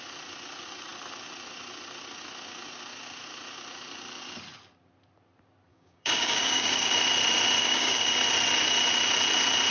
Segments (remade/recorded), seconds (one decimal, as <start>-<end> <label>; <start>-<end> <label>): 0.0-5.7 recorded; 5.7-6.9 remade; 6.9-7.6 recorded; 7.6-8.2 remade; 8.2-9.7 recorded